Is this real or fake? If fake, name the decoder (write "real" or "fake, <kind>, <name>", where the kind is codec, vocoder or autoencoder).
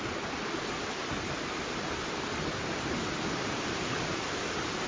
real